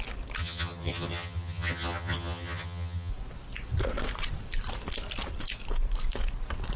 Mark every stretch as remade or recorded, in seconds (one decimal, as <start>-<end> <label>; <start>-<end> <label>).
0.0-0.4 recorded; 0.4-3.1 remade; 3.1-6.8 recorded